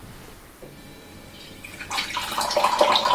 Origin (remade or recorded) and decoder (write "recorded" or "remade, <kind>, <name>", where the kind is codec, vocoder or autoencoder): recorded